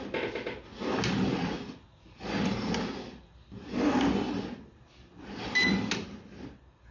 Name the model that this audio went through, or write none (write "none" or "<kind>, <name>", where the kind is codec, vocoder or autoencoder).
none